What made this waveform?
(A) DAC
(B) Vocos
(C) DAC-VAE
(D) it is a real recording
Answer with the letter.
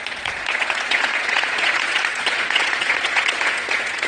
B